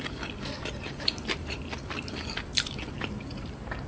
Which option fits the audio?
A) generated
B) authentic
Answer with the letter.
B